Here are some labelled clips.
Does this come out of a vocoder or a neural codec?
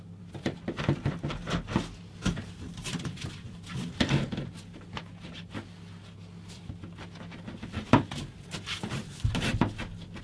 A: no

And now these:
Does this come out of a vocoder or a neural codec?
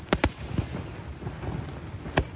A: no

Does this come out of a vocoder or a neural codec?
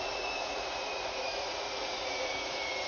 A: yes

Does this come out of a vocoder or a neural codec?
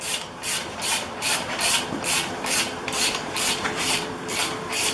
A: yes